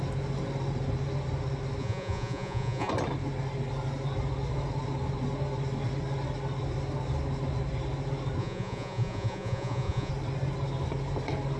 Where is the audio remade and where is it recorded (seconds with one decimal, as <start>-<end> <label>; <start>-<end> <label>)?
0.0-1.8 recorded; 1.8-2.9 remade; 2.9-8.4 recorded; 8.4-10.1 remade; 10.1-11.6 recorded